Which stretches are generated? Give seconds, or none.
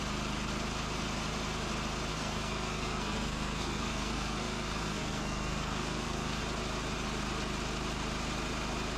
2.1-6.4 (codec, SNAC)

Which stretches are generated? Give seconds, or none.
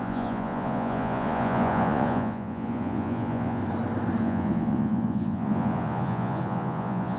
0.0-3.6 (vocoder, Vocos); 4.2-7.2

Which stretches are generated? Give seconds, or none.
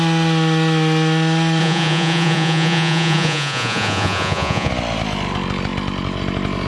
1.6-4.7 (vocoder, Vocos)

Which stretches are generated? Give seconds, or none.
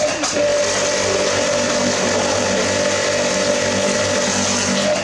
none